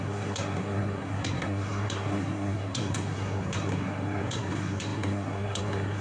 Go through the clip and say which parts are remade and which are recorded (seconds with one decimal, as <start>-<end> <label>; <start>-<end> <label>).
0.0-6.0 remade